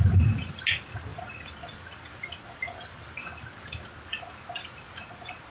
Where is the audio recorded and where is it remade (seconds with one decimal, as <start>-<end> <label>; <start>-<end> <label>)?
0.0-5.5 recorded